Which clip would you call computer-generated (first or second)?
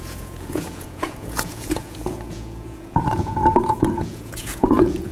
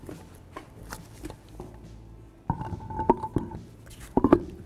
first